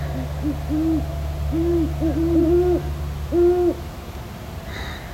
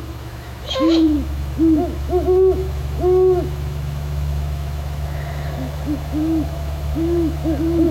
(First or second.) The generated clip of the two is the second